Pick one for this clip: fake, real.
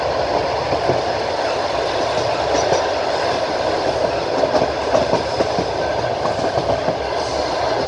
real